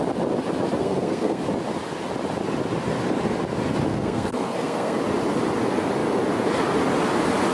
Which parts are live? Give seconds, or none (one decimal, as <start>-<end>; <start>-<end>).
0.0-0.8; 1.4-3.9; 5.0-7.5